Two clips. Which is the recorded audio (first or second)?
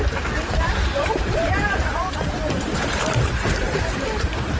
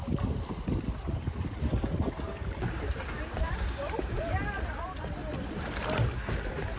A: second